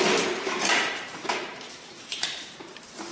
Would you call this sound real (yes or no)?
no